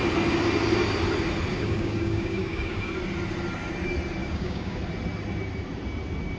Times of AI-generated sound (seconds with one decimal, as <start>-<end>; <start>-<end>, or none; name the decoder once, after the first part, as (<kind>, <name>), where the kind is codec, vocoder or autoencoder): 1.5-2.9 (codec, DAC); 4.2-4.8